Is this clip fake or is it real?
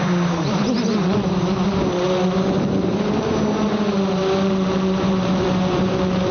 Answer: fake